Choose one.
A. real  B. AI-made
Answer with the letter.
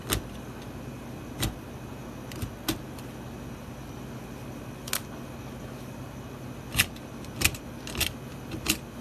A